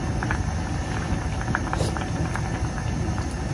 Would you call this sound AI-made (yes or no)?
no